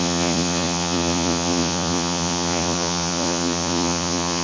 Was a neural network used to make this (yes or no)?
yes